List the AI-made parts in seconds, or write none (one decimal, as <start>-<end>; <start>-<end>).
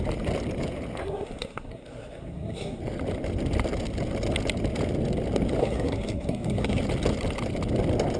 1.0-2.8; 5.6-6.8